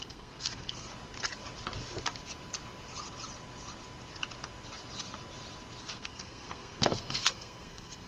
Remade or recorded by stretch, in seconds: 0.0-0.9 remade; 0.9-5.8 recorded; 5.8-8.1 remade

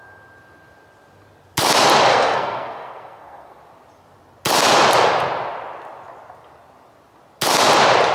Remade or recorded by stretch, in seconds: 0.0-2.1 recorded; 2.1-3.6 remade; 3.6-8.1 recorded

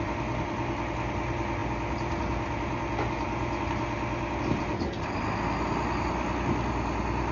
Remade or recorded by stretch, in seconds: 0.0-7.3 recorded

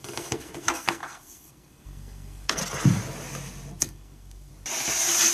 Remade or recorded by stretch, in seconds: 0.0-2.6 remade; 2.6-3.8 recorded; 3.8-4.5 remade; 4.5-5.3 recorded